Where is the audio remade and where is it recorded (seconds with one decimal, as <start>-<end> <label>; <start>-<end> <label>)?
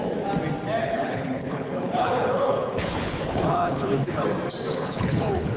0.0-0.8 recorded; 0.8-4.2 remade; 4.2-4.7 recorded; 4.7-5.6 remade